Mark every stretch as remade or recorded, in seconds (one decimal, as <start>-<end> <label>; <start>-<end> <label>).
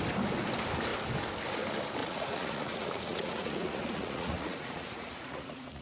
0.0-2.0 recorded; 2.0-5.8 remade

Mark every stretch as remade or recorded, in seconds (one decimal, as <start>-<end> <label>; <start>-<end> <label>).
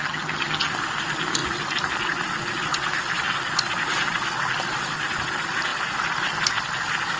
0.0-0.7 remade; 0.7-7.2 recorded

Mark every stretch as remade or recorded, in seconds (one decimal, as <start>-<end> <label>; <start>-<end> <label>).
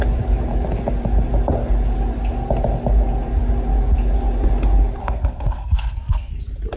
0.0-5.0 recorded; 5.0-6.3 remade; 6.3-6.8 recorded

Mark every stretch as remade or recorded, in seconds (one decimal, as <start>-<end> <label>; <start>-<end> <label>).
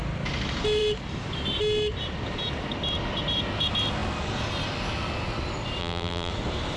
0.0-5.8 recorded; 5.8-6.3 remade; 6.3-6.8 recorded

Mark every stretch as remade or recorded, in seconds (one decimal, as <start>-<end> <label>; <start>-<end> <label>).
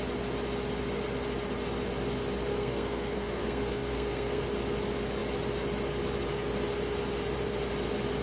0.0-2.5 recorded; 2.5-4.4 remade; 4.4-8.2 recorded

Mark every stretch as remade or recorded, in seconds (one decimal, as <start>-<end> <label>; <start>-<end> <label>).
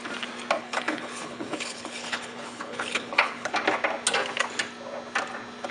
0.0-0.6 recorded; 0.6-3.5 remade; 3.5-5.7 recorded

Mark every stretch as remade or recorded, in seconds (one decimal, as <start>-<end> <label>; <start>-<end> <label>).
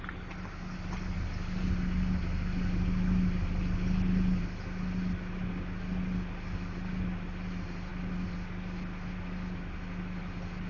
0.0-10.7 recorded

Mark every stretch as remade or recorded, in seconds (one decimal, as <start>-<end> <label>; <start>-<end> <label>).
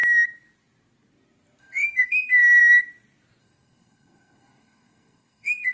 0.0-1.6 recorded; 1.6-2.6 remade; 2.6-3.4 recorded; 3.4-5.7 remade